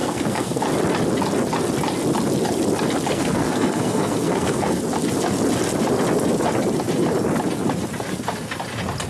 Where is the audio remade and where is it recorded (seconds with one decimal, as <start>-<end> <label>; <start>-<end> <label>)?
0.0-0.6 remade; 0.6-3.1 recorded; 3.1-4.8 remade; 4.8-9.1 recorded